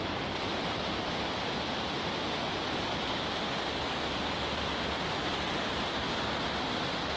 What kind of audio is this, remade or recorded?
recorded